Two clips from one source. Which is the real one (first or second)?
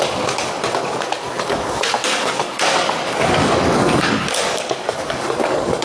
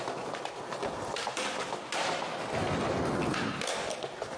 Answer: second